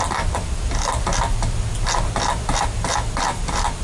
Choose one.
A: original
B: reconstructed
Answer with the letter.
A